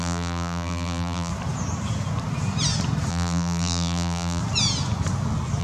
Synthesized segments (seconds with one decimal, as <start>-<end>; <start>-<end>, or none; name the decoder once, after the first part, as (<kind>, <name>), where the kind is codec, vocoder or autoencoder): 0.0-1.3 (vocoder, BigVGAN v2); 3.1-4.4